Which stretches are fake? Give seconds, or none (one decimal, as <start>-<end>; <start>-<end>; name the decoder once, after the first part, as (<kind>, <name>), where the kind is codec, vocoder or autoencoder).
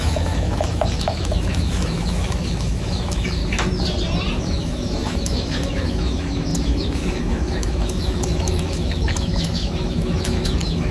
0.0-3.4 (autoencoder, DAC-VAE); 4.4-10.9